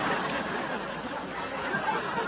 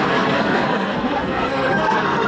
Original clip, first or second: first